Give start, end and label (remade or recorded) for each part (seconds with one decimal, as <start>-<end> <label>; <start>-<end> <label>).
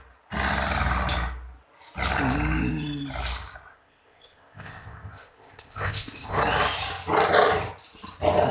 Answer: 0.0-3.7 recorded; 3.7-6.4 remade; 6.4-8.5 recorded